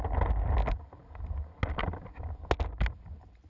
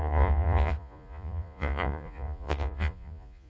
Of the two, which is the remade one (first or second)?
second